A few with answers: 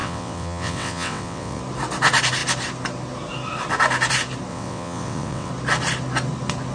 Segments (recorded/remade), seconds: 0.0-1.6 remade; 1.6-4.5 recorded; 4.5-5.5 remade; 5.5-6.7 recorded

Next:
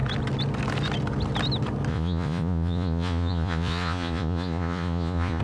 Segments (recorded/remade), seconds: 0.0-1.9 recorded; 1.9-5.4 remade